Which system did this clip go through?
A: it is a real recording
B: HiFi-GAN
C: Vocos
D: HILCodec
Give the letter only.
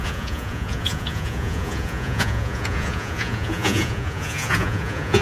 C